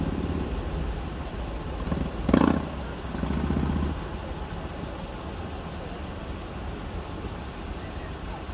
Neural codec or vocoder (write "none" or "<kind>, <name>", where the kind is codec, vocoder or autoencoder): none